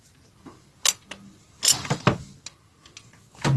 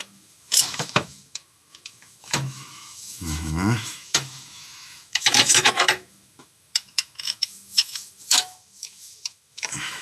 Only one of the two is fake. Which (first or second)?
second